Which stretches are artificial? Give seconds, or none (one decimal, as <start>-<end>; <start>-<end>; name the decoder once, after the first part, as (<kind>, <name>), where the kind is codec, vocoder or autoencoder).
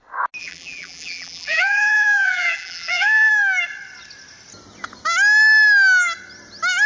0.4-3.3 (vocoder, BigVGAN v2)